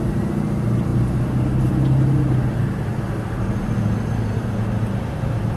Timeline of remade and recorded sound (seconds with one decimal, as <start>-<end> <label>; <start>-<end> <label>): 0.0-5.6 recorded